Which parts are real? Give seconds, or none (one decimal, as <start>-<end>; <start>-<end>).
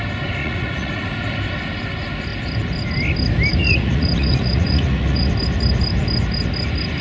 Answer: 0.0-0.4; 1.0-3.5; 5.3-7.0